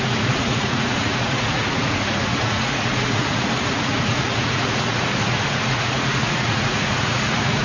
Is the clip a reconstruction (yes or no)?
yes